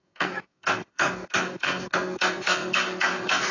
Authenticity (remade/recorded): remade